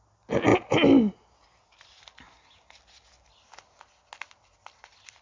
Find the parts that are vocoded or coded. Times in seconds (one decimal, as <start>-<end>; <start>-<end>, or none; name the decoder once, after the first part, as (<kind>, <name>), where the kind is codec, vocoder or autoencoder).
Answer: none